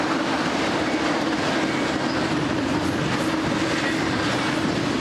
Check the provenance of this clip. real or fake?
real